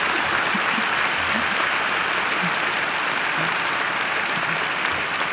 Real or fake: real